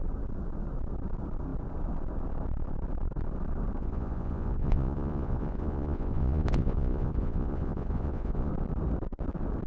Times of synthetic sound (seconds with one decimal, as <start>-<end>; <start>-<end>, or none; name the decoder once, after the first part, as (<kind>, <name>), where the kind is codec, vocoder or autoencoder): 3.8-8.5 (vocoder, Vocos)